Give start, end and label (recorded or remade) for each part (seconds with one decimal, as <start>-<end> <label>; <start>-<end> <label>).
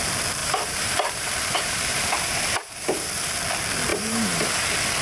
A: 0.0-0.4 recorded; 0.4-3.3 remade; 3.3-3.9 recorded; 3.9-4.5 remade; 4.5-5.0 recorded